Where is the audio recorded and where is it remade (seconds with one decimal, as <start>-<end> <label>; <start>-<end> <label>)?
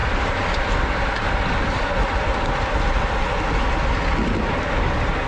0.0-5.3 recorded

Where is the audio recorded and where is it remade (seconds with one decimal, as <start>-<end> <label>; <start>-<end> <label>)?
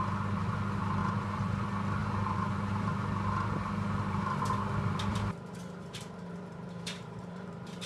0.0-1.0 recorded; 1.0-1.6 remade; 1.6-2.0 recorded; 2.0-4.4 remade; 4.4-5.1 recorded; 5.1-7.9 remade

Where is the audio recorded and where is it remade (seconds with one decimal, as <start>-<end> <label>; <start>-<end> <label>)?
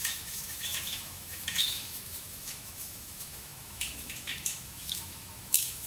0.0-5.9 remade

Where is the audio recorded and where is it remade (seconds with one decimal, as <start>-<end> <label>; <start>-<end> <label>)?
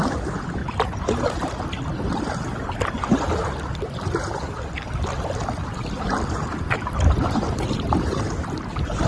0.0-9.1 recorded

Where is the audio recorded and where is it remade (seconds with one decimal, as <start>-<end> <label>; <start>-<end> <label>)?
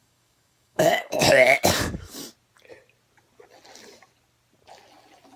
0.0-2.3 remade; 2.3-5.4 recorded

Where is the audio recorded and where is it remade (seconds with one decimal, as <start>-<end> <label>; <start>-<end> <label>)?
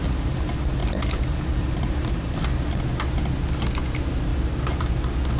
0.0-0.8 recorded; 0.8-2.8 remade; 2.8-4.3 recorded; 4.3-4.8 remade; 4.8-5.4 recorded